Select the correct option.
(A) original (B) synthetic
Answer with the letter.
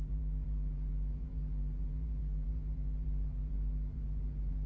B